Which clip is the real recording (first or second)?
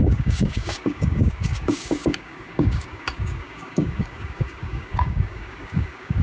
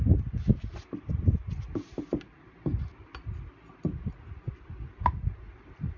second